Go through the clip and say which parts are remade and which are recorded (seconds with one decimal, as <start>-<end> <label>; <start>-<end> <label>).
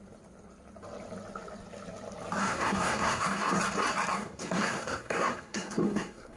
0.0-2.4 recorded; 2.4-3.6 remade; 3.6-4.1 recorded; 4.1-6.4 remade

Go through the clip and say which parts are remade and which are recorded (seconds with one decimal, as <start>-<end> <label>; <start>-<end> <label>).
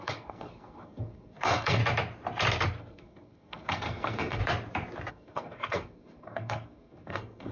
0.0-1.8 remade; 1.8-2.8 recorded; 2.8-4.4 remade; 4.4-5.1 recorded; 5.1-7.5 remade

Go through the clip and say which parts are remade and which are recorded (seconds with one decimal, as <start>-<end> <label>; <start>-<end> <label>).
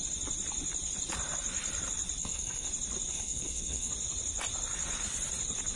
0.0-2.2 recorded; 2.2-2.7 remade; 2.7-3.1 recorded; 3.1-3.9 remade; 3.9-5.8 recorded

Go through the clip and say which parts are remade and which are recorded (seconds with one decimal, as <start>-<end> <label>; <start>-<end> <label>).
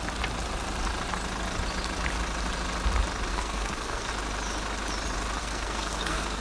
0.0-3.3 recorded; 3.3-4.1 remade; 4.1-5.4 recorded; 5.4-6.4 remade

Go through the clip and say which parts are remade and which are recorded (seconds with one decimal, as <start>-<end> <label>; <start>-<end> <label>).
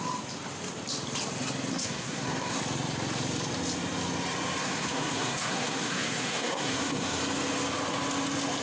0.0-1.7 recorded; 1.7-2.6 remade; 2.6-4.6 recorded; 4.6-7.2 remade; 7.2-8.6 recorded